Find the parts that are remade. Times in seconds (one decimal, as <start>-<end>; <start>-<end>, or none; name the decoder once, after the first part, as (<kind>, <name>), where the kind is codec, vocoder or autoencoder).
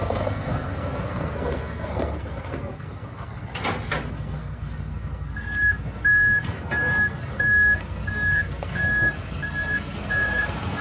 0.0-3.5 (codec, SNAC); 4.1-10.8